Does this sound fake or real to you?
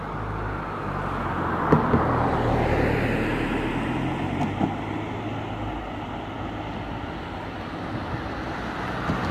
real